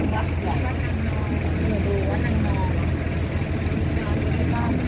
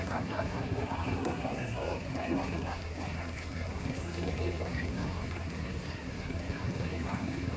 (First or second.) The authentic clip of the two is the first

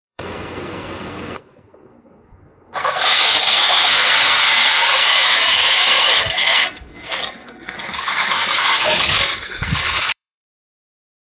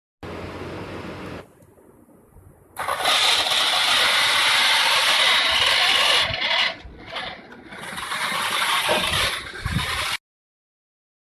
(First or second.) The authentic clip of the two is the second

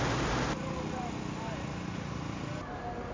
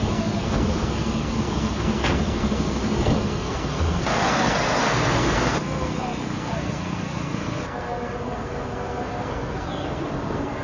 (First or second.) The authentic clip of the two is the first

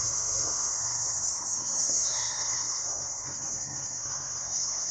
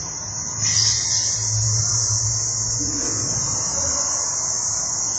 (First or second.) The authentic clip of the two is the second